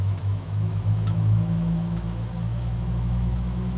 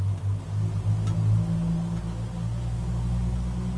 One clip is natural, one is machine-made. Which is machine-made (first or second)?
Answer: first